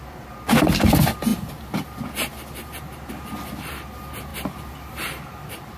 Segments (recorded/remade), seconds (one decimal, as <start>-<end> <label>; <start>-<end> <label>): 0.0-5.8 recorded